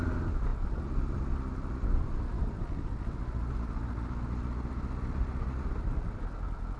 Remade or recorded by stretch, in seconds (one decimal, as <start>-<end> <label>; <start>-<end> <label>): 0.0-6.8 recorded